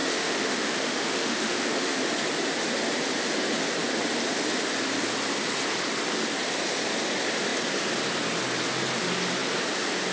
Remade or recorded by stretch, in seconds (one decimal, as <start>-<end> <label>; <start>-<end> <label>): 0.0-2.0 remade; 2.0-10.1 recorded